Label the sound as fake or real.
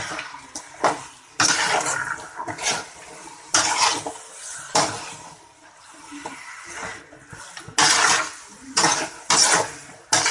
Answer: real